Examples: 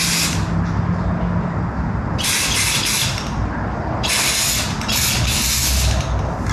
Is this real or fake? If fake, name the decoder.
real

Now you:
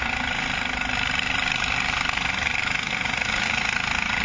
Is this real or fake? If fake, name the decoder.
real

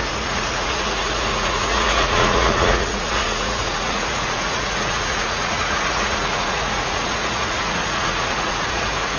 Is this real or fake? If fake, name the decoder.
fake, vocoder, Vocos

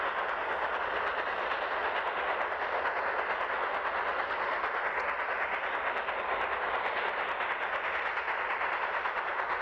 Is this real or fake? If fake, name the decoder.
real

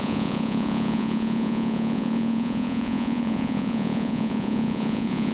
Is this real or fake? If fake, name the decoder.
fake, vocoder, Vocos